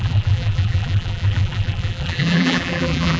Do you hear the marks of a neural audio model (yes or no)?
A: yes